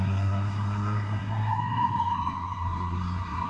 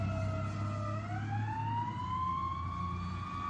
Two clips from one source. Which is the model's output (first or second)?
first